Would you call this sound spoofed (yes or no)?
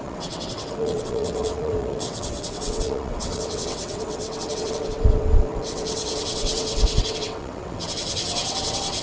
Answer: yes